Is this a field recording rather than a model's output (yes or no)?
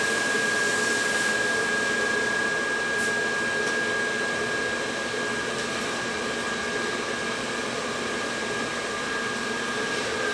yes